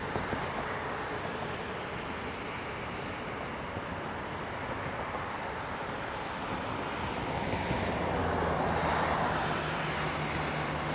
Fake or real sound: real